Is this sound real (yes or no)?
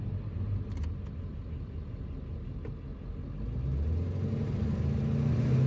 yes